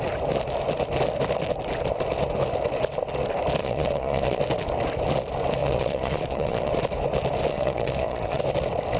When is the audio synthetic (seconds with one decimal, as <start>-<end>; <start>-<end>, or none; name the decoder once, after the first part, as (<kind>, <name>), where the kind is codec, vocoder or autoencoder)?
3.6-4.4 (vocoder, Vocos); 5.6-6.7; 7.5-8.4